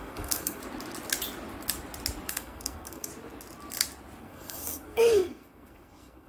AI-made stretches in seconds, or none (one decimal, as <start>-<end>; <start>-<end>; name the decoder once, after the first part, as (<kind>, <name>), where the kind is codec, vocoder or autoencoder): 0.0-0.6 (codec, SNAC); 2.3-3.1; 4.2-6.3